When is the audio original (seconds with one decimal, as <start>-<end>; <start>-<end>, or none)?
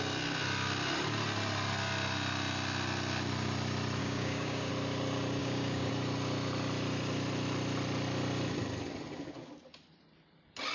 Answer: 0.0-4.0; 4.7-5.4; 5.9-10.7